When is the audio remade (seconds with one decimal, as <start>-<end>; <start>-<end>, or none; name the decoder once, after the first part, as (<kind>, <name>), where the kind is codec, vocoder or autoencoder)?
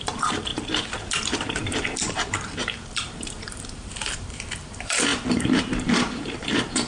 0.0-6.9 (vocoder, BigVGAN v2)